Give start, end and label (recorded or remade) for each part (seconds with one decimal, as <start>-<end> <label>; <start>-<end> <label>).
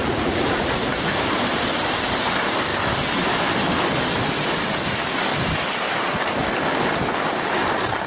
0.0-1.1 remade; 1.1-8.1 recorded